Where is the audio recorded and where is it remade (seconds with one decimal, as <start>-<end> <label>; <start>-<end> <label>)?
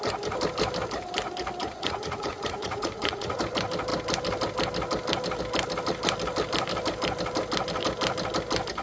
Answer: 0.0-1.6 recorded; 1.6-3.4 remade; 3.4-8.8 recorded